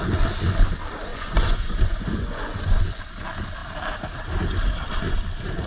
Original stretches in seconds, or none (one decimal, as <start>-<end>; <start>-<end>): 0.0-1.1; 3.0-5.7